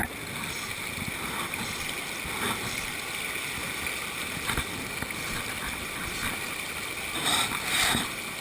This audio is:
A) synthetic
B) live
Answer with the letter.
B